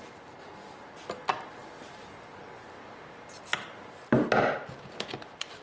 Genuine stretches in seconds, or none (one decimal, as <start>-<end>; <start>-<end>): 0.0-5.6